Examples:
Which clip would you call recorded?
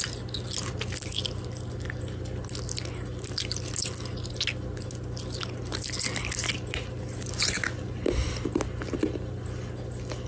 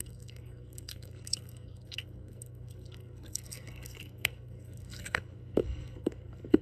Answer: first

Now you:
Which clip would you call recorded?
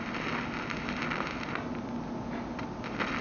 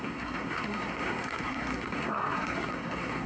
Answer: first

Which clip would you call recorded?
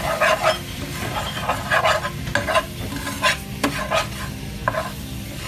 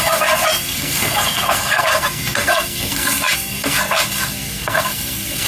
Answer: first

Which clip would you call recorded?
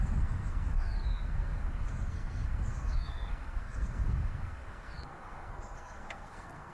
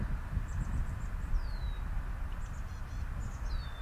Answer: second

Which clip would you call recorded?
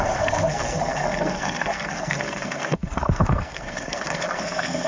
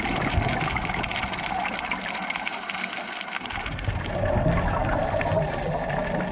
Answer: second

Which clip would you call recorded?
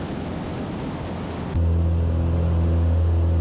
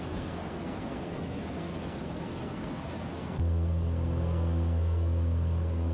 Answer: first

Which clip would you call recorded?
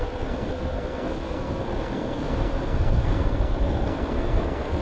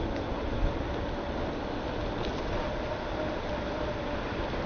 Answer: second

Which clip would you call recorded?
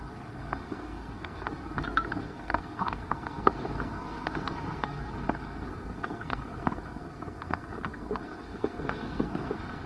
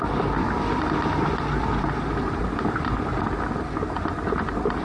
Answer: second